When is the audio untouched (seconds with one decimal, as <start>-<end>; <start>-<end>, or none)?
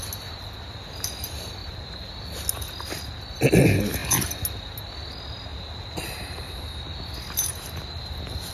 0.0-1.6; 2.2-5.5; 6.6-8.5